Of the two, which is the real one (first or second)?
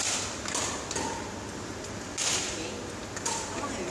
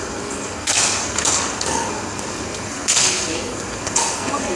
first